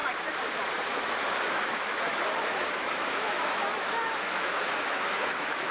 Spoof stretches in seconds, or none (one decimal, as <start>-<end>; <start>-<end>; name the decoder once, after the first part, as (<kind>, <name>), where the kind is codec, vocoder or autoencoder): 0.8-5.7 (autoencoder, DAC-VAE)

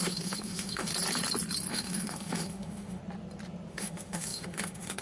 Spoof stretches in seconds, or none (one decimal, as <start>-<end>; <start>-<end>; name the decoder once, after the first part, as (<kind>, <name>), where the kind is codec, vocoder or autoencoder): 0.0-0.9 (autoencoder, DAC-VAE); 1.7-3.0; 3.7-5.0

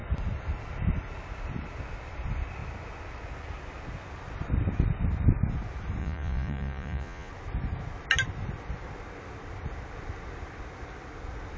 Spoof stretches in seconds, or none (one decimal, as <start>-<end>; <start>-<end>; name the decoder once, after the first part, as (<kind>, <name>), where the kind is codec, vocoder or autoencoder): 6.0-7.3 (vocoder, Vocos)

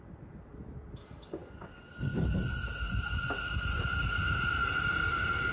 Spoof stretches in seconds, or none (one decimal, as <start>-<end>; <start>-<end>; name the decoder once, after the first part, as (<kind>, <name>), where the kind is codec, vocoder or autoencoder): none